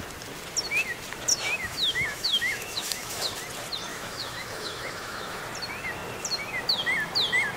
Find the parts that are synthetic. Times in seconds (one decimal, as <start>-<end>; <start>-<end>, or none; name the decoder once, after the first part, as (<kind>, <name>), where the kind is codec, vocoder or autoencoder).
1.3-3.3 (autoencoder, DAC-VAE); 3.9-5.4